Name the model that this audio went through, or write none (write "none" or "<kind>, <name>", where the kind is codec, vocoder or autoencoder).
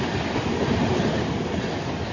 none